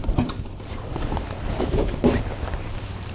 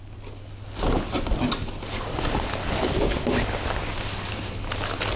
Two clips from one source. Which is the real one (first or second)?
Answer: second